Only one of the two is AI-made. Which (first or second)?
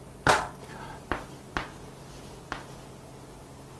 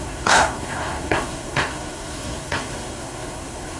second